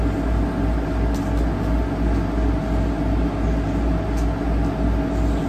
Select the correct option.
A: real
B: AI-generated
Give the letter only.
A